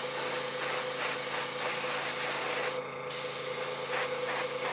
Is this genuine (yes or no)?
yes